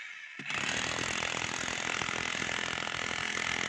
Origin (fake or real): real